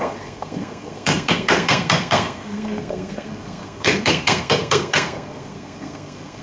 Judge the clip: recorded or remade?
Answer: remade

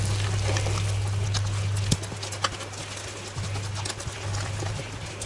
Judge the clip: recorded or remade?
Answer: recorded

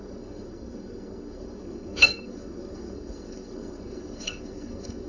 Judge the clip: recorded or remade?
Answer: remade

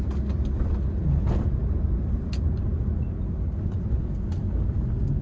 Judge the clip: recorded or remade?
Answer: recorded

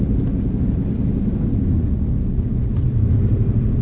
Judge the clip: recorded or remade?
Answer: recorded